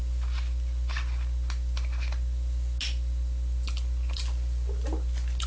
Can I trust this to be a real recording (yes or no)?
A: yes